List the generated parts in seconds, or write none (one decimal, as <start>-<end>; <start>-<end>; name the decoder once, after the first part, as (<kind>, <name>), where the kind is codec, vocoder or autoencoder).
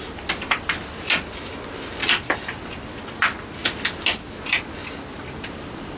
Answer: 2.0-2.7 (vocoder, BigVGAN v2); 4.8-6.0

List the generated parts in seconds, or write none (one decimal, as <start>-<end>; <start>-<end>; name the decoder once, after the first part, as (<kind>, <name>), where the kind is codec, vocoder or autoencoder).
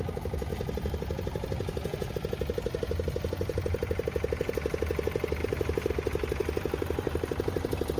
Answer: 5.4-5.9 (vocoder, BigVGAN v2); 6.4-7.3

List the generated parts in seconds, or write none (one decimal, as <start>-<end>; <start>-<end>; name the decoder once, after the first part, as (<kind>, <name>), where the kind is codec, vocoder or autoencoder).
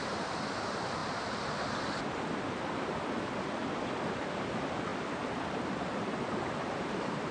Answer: 0.0-1.0 (vocoder, BigVGAN v2); 3.2-3.6; 4.2-4.9; 5.8-7.3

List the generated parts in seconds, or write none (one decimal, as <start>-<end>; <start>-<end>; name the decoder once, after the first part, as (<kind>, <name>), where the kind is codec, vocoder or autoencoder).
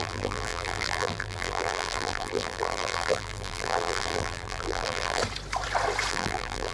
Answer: 0.0-5.2 (vocoder, BigVGAN v2); 6.1-6.7